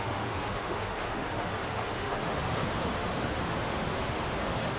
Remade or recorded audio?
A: remade